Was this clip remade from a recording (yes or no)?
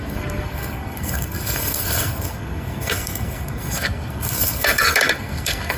yes